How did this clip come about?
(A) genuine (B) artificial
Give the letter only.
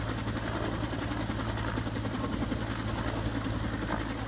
A